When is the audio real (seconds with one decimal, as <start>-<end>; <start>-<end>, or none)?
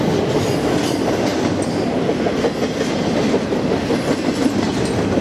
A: 0.0-5.2